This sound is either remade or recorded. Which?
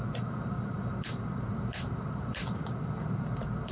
remade